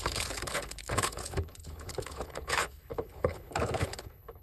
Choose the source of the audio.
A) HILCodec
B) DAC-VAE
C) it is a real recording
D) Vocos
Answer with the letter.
A